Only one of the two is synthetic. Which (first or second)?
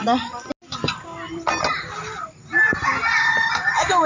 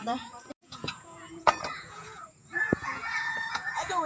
second